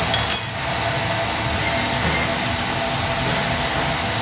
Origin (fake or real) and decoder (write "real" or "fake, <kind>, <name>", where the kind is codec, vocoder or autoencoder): real